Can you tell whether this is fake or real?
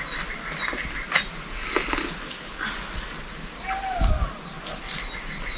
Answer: real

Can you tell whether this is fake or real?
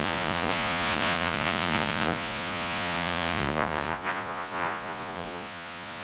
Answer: fake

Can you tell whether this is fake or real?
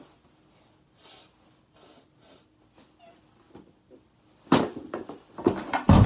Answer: real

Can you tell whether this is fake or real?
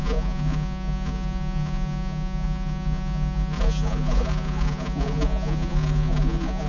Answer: fake